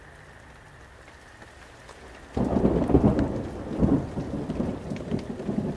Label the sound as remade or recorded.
recorded